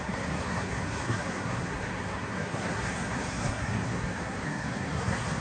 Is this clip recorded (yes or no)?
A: no